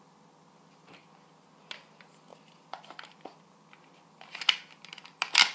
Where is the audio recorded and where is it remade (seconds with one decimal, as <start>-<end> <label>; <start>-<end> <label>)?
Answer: 0.0-5.5 recorded